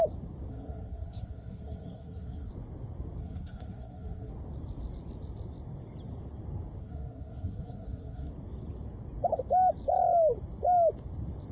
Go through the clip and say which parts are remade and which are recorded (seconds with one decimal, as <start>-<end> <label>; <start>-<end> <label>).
0.0-0.5 recorded; 0.5-2.5 remade; 2.5-3.2 recorded; 3.2-4.3 remade; 4.3-6.8 recorded; 6.8-8.3 remade; 8.3-11.5 recorded